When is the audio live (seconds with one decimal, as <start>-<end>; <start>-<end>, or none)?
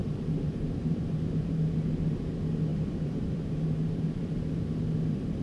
1.6-2.7; 4.6-5.4